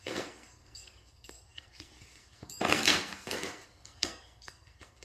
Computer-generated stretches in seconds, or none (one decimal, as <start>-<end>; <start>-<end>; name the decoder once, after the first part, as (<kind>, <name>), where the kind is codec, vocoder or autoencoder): 0.0-5.0 (codec, SNAC)